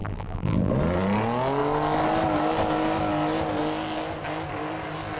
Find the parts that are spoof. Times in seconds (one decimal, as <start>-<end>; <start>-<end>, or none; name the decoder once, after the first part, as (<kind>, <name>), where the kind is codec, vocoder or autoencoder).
0.0-0.7 (vocoder, BigVGAN v2)

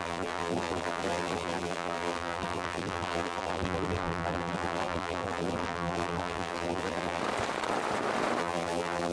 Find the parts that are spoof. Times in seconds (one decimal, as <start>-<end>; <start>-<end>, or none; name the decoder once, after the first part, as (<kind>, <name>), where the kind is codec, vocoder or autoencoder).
0.0-7.2 (vocoder, BigVGAN v2); 8.4-9.1

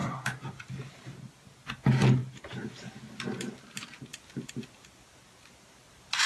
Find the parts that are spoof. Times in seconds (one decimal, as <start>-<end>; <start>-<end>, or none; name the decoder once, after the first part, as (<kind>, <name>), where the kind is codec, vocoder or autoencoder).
0.0-1.3 (vocoder, BigVGAN v2); 2.2-3.1

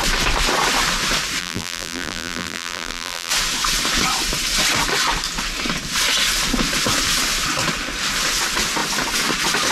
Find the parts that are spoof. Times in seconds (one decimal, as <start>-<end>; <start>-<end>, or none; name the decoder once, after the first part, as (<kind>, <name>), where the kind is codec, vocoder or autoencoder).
1.4-3.3 (vocoder, BigVGAN v2)

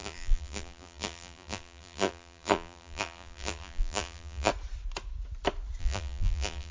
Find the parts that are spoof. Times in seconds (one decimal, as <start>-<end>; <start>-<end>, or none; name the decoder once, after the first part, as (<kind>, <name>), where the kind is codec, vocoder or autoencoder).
0.0-4.5 (vocoder, BigVGAN v2); 5.8-6.7